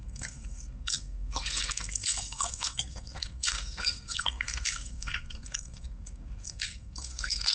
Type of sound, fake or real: fake